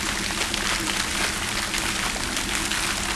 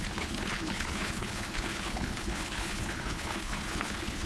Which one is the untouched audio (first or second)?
first